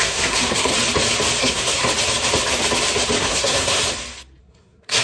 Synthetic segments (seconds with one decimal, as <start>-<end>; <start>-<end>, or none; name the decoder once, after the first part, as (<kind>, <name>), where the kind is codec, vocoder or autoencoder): 0.0-0.7 (codec, SNAC); 1.4-1.8; 3.2-3.8; 4.4-5.0